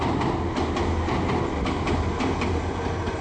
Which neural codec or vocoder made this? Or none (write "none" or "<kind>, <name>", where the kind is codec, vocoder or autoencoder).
none